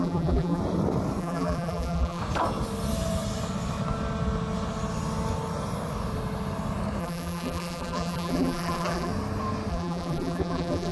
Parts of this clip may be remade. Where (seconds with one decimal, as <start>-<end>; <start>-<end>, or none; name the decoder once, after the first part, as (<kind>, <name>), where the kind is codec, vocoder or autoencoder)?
0.0-0.6 (vocoder, BigVGAN v2); 1.2-2.2; 7.0-9.1; 9.7-10.9